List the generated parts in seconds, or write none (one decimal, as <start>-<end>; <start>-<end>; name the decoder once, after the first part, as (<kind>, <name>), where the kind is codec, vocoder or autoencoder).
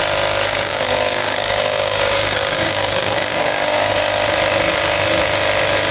0.5-4.0 (codec, DAC)